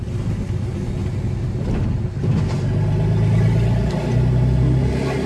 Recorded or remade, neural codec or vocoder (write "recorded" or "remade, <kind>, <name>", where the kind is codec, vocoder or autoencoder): recorded